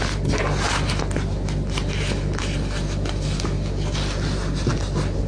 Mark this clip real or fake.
real